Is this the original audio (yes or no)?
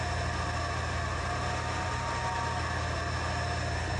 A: yes